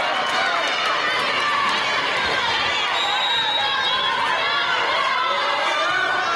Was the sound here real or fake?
real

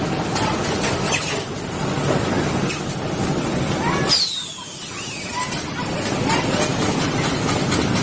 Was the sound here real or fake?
real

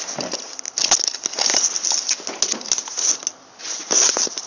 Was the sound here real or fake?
real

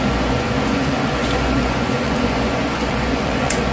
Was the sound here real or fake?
fake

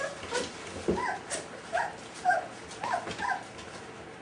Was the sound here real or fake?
real